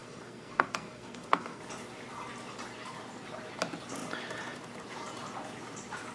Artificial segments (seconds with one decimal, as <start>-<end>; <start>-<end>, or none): 0.0-1.6